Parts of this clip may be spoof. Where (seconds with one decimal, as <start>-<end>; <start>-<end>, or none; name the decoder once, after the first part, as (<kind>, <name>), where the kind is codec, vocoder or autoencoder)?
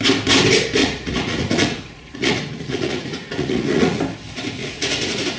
0.8-4.0 (vocoder, Vocos); 4.6-5.4